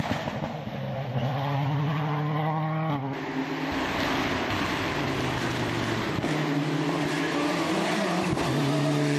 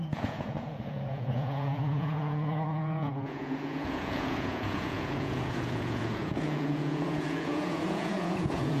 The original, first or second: first